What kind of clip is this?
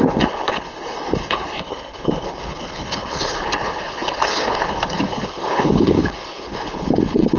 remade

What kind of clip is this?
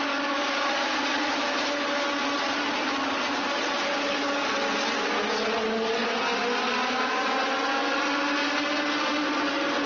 recorded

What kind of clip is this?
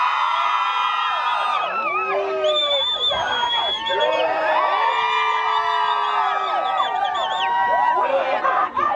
recorded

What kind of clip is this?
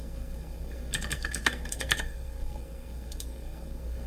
remade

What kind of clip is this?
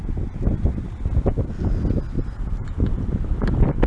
recorded